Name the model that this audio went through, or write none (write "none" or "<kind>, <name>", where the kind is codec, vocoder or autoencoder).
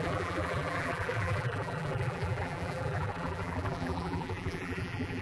vocoder, BigVGAN v2